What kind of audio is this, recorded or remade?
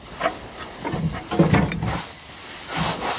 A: recorded